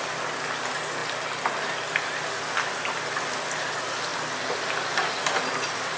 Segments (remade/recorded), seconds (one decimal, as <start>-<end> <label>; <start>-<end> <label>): 0.0-6.0 recorded